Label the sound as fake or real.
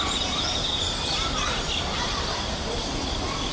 real